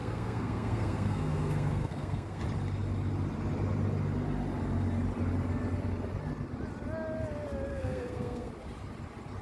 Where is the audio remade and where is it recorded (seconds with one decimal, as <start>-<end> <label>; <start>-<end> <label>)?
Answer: 0.0-2.4 remade; 2.4-7.7 recorded; 7.7-8.5 remade; 8.5-9.4 recorded